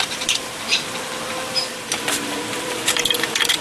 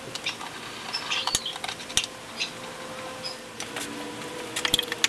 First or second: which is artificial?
first